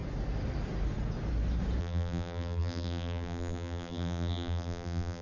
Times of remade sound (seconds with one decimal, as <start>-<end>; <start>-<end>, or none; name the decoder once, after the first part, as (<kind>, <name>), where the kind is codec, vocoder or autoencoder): 1.8-5.2 (vocoder, BigVGAN v2)